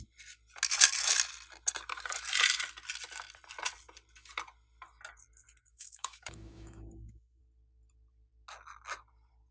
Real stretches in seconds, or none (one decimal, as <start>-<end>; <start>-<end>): 0.0-5.6; 7.4-9.5